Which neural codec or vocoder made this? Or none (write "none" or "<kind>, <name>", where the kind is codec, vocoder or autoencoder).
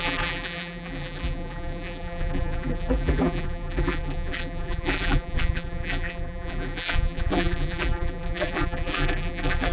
vocoder, BigVGAN v2